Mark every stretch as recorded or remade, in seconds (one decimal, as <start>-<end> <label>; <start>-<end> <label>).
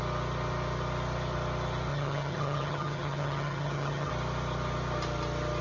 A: 0.0-1.9 recorded; 1.9-4.1 remade; 4.1-5.6 recorded